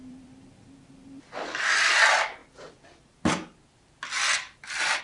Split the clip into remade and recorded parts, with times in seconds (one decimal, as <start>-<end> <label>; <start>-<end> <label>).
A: 0.0-1.6 remade; 1.6-5.0 recorded